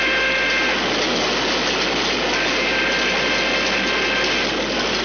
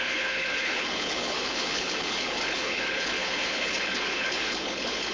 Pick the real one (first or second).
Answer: first